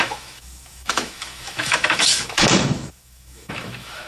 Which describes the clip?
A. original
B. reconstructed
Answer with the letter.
B